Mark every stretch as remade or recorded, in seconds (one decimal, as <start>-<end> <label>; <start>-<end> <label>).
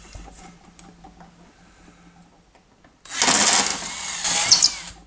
0.0-5.1 recorded